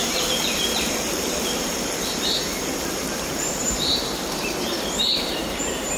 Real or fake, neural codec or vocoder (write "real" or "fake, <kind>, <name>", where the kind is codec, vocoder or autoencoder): fake, vocoder, BigVGAN v2